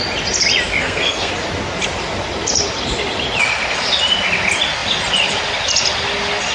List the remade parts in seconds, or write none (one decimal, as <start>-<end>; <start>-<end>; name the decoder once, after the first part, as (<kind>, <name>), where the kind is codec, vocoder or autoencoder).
0.8-1.3 (codec, SNAC)